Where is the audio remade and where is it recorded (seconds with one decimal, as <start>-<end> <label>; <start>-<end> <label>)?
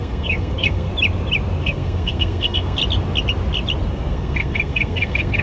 0.0-0.9 remade; 0.9-1.6 recorded; 1.6-2.8 remade; 2.8-3.9 recorded; 3.9-5.4 remade